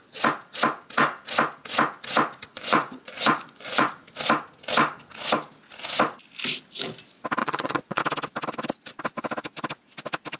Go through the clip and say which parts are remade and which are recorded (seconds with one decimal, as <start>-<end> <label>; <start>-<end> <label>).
0.0-2.5 recorded; 2.5-3.9 remade; 3.9-7.4 recorded; 7.4-8.0 remade; 8.0-10.4 recorded